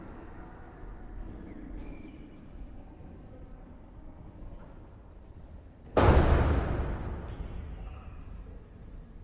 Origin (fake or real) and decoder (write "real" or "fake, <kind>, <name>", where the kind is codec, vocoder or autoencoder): real